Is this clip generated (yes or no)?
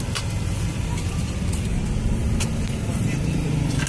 no